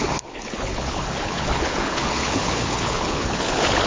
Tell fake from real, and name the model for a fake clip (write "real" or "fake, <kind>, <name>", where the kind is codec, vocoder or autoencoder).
fake, codec, HILCodec